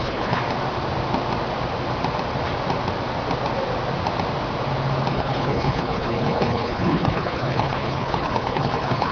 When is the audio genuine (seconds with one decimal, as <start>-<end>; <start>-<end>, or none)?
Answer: 0.4-5.1